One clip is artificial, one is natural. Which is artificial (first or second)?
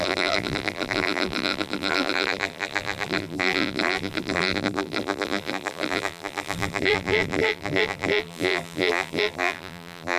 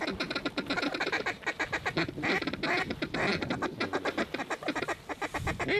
first